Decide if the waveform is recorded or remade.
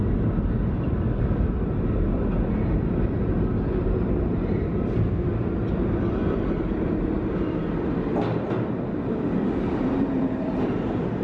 recorded